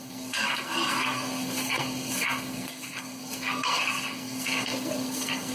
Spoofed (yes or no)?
yes